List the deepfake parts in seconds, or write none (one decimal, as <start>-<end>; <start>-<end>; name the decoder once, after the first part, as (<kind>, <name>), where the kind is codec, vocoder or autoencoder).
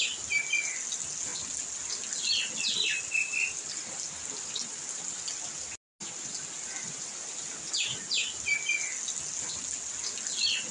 none